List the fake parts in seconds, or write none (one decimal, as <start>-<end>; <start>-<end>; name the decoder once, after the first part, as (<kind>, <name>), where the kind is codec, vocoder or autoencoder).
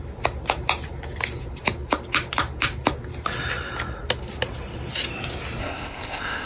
5.6-6.5 (codec, ZipCodec)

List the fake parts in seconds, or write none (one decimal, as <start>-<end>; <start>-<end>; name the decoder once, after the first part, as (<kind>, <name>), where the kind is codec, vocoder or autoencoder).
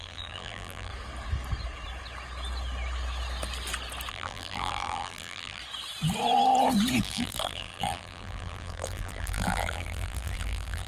0.0-0.9 (vocoder, BigVGAN v2); 4.1-5.6; 7.0-10.9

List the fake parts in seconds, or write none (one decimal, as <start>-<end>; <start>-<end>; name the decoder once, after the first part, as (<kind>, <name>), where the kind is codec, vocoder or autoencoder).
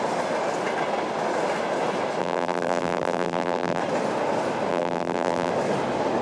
2.2-3.8 (vocoder, BigVGAN v2); 4.7-5.5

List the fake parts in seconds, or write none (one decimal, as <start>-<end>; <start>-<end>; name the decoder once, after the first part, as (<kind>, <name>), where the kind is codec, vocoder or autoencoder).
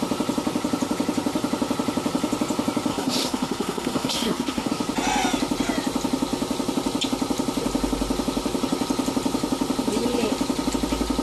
2.9-4.7 (codec, SNAC)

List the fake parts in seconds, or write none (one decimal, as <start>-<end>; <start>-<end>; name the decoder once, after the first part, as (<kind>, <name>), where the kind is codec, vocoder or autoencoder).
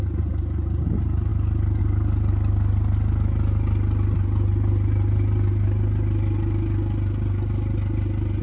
none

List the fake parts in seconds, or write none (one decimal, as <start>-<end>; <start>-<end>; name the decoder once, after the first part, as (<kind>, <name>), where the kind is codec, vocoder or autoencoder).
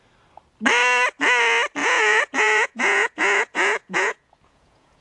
1.8-5.0 (vocoder, Vocos)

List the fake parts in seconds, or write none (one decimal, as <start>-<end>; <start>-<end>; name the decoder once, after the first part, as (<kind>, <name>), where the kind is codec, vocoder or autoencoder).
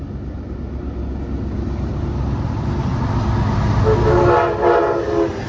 none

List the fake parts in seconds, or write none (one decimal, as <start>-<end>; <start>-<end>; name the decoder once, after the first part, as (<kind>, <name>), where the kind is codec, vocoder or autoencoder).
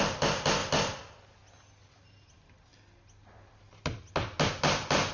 none